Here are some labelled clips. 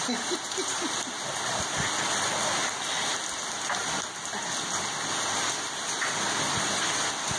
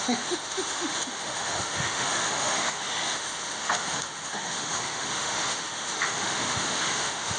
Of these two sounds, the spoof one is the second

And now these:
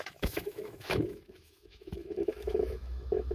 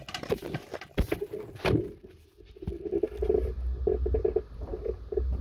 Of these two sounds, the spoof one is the first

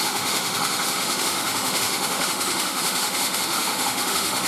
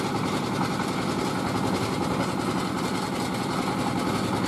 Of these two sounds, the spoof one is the first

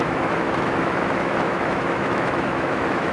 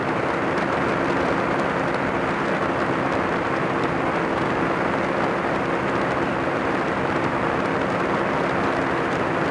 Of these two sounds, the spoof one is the first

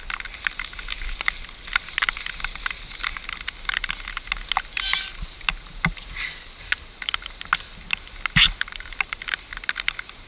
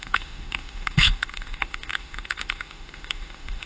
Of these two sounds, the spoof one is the second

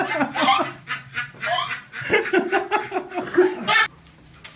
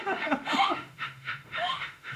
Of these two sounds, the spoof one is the second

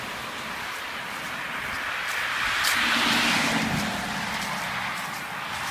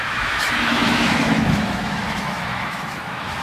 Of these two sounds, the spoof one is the second